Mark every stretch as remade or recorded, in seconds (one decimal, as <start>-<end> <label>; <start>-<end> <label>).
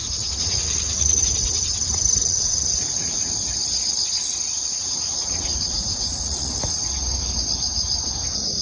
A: 0.0-1.2 remade; 1.2-2.2 recorded; 2.2-3.3 remade; 3.3-5.2 recorded; 5.2-6.6 remade; 6.6-8.6 recorded